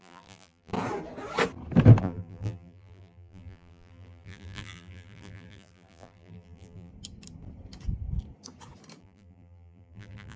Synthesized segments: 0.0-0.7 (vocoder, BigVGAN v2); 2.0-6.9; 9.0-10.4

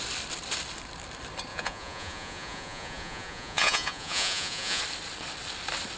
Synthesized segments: 1.5-4.8 (vocoder, Vocos)

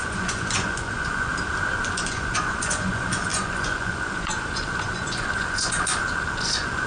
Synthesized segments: 0.0-1.3 (vocoder, Vocos); 1.9-6.9

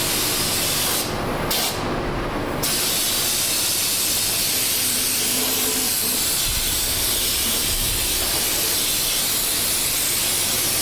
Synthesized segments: none

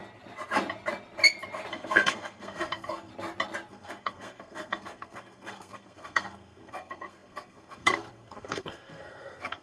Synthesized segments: 1.7-3.1 (codec, SNAC); 3.7-9.6

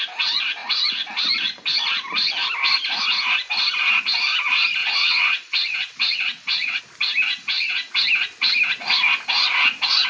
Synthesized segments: 4.8-6.8 (vocoder, WaveNeXt); 7.3-7.9

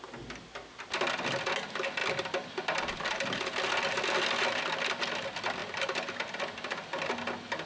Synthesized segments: none